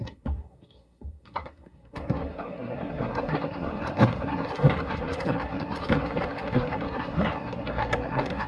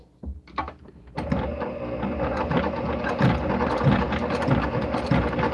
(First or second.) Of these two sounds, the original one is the second